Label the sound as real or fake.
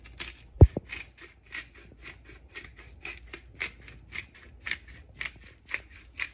real